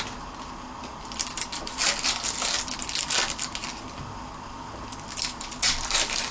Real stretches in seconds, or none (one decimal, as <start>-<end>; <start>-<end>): 0.0-6.3